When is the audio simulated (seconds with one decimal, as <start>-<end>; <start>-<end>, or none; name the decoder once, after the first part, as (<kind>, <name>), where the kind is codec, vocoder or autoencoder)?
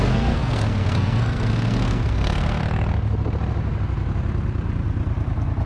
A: 0.0-2.6 (codec, SNAC)